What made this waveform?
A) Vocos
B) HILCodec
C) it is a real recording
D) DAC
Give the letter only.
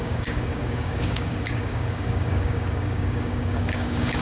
D